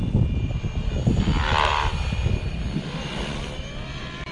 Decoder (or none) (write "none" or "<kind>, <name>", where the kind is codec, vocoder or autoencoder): none